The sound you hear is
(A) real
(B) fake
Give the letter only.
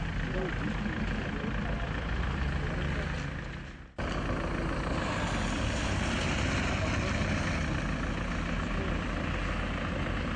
A